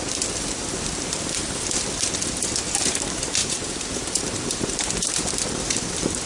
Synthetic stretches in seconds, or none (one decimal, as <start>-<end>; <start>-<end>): 3.4-4.2